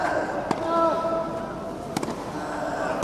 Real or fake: real